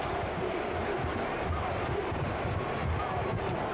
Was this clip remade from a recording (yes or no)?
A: no